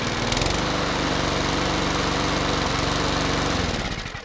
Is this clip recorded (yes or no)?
yes